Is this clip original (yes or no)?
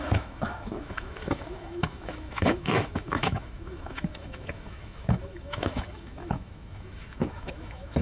no